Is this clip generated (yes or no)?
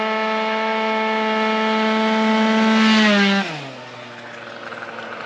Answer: no